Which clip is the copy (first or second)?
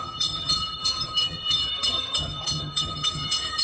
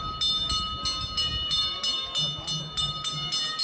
first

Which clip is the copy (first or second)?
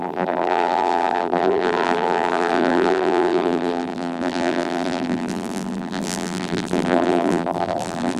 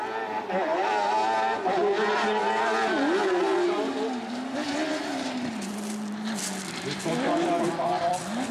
first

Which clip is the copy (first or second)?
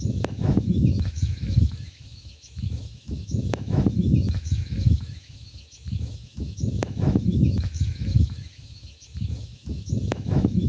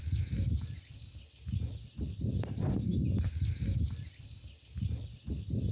first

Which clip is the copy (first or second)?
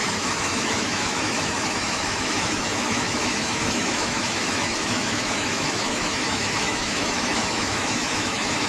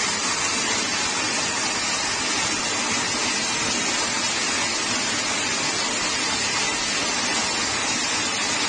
first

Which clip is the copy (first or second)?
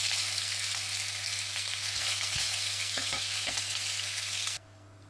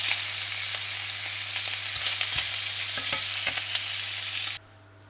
first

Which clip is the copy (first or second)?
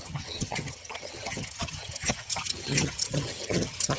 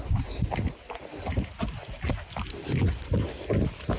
first